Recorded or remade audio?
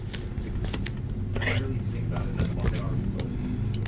recorded